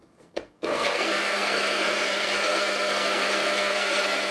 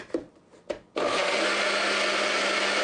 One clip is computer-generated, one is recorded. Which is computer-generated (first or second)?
first